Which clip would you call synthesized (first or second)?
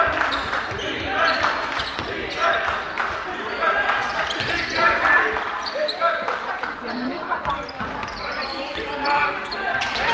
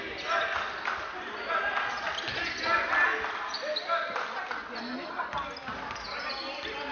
first